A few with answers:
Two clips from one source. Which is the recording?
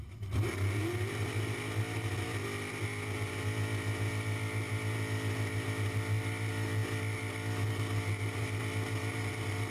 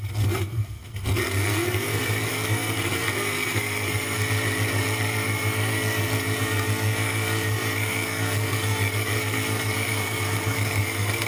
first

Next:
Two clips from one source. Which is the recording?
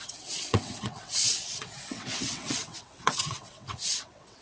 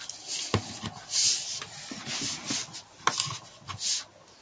second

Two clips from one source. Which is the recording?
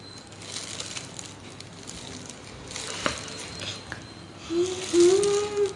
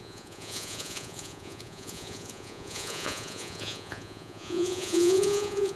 first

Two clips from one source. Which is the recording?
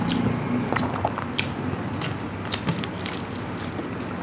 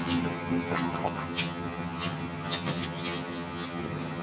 first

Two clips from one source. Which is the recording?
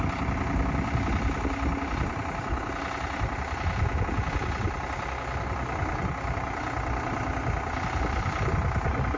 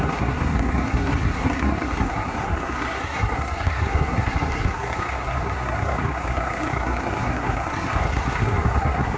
first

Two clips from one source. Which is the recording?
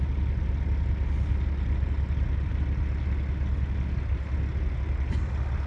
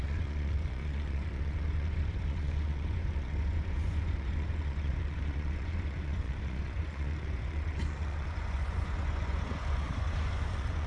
first